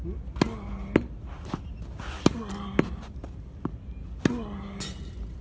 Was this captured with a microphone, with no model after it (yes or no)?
yes